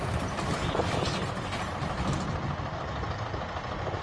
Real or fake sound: real